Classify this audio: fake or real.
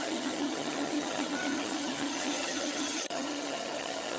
fake